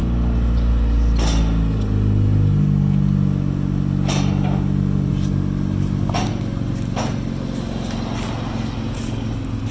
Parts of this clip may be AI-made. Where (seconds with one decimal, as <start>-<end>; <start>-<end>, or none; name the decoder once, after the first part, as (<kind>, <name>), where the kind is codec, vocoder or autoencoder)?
none